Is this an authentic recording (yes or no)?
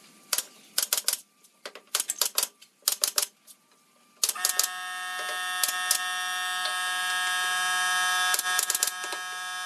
yes